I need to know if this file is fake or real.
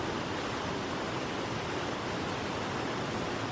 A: real